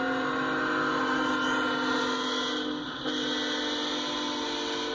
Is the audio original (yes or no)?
yes